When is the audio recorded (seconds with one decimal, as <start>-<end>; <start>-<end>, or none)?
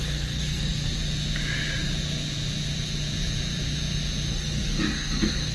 1.0-4.3